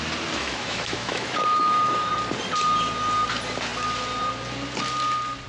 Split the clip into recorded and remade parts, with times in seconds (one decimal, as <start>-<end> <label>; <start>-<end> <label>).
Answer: 0.0-0.4 recorded; 0.4-2.1 remade; 2.1-5.5 recorded